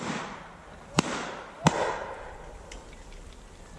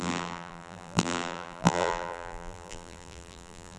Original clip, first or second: first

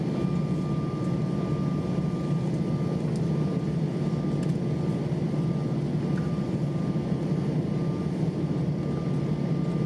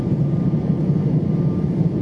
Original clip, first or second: first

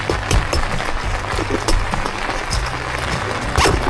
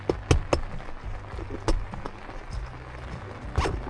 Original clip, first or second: second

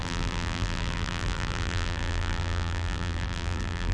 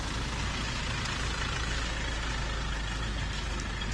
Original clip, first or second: second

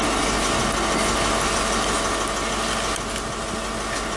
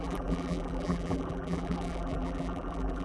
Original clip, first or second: first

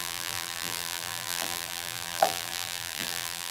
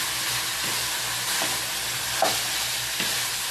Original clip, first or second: second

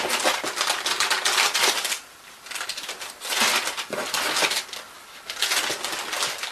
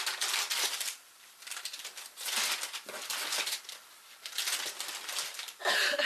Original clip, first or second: first